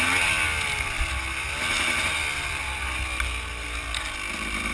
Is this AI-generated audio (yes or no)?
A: no